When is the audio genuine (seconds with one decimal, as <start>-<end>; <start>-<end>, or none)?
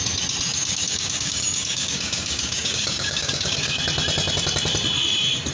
0.0-0.5; 3.8-5.5